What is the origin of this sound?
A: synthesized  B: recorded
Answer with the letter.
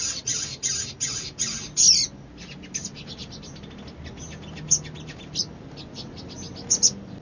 B